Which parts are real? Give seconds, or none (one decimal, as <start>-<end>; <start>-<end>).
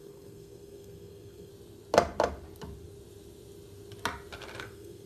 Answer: 1.5-4.6